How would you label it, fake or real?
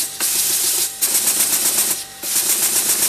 real